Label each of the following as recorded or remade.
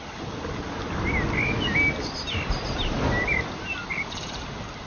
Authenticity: recorded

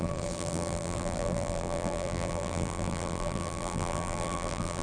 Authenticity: remade